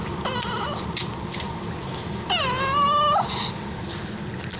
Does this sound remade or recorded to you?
recorded